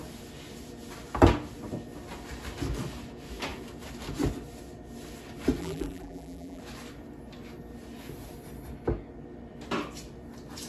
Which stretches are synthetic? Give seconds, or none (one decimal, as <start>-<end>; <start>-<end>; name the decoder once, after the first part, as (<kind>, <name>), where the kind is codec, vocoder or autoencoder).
5.6-6.6 (vocoder, BigVGAN v2)